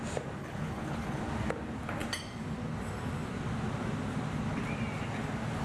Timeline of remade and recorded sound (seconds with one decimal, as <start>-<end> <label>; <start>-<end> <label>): 0.0-0.4 recorded; 0.4-1.2 remade; 1.2-5.6 recorded